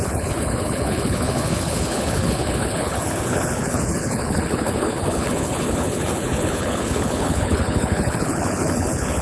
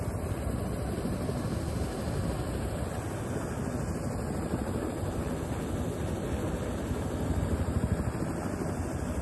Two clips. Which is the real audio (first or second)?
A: second